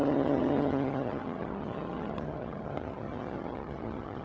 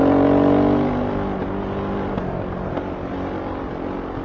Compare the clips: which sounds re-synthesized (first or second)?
first